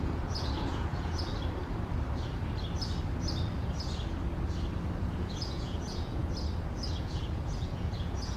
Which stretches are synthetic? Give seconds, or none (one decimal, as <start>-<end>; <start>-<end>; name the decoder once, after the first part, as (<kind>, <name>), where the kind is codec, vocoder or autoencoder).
0.0-1.3 (vocoder, Vocos); 5.0-6.2; 7.0-8.4